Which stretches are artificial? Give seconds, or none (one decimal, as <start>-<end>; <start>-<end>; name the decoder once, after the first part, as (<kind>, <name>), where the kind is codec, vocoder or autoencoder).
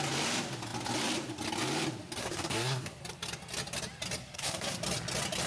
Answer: 2.2-3.0 (codec, SNAC); 4.2-4.8